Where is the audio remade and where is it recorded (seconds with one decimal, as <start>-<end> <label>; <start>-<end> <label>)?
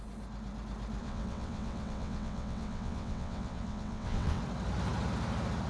0.0-1.0 recorded; 1.0-4.4 remade; 4.4-5.7 recorded